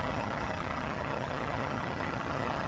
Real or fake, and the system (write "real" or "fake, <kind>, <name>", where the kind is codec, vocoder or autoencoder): fake, vocoder, HiFi-GAN